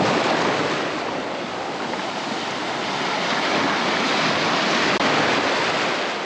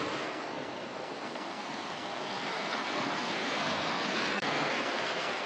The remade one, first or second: second